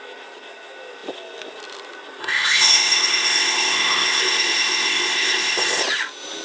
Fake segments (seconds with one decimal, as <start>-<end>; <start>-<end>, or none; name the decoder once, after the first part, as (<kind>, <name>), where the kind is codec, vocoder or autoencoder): 2.2-5.8 (codec, ZipCodec)